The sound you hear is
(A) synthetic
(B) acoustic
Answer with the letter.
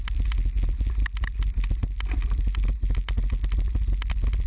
B